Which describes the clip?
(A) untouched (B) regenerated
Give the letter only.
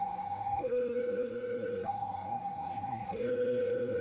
B